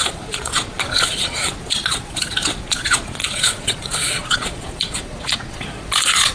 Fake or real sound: fake